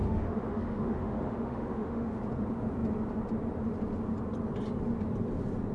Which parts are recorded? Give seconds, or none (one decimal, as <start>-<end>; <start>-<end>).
2.2-5.7